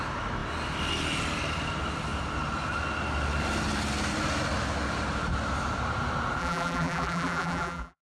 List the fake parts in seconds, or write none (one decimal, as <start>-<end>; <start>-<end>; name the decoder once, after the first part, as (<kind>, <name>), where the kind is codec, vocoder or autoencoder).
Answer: 6.4-8.0 (vocoder, BigVGAN v2)